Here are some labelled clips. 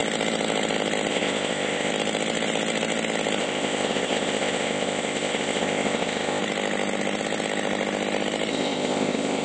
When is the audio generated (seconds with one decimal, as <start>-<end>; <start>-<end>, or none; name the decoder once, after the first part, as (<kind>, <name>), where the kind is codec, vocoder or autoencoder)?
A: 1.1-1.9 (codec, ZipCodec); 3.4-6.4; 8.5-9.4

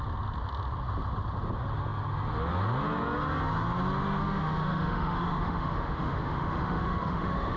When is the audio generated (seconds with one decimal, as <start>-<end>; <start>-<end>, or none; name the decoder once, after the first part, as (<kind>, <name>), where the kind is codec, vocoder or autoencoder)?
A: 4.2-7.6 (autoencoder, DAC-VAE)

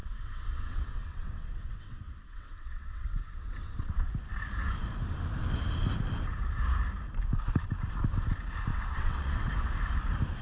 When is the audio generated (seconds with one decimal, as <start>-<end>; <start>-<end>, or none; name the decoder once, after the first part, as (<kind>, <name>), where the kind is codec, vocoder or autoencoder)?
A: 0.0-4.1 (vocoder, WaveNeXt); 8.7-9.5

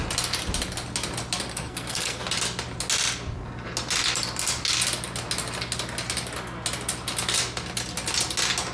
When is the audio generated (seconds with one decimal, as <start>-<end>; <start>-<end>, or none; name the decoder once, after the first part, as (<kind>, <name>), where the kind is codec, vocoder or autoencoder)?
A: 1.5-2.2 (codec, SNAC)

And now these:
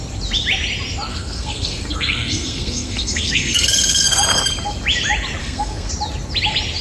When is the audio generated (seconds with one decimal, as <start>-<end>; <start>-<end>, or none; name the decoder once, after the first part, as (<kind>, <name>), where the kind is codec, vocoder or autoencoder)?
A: 1.1-4.2 (codec, SNAC); 5.4-5.9